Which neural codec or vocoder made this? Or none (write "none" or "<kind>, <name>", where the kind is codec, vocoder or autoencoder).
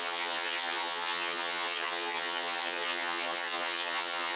vocoder, HiFi-GAN